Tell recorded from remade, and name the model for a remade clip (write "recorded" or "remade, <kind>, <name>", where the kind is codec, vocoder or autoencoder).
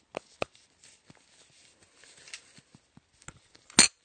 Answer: recorded